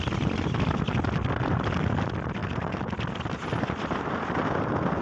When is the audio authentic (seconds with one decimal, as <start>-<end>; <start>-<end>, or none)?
0.0-5.0